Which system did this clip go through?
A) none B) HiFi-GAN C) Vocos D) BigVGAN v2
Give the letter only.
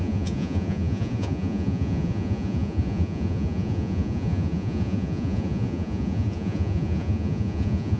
C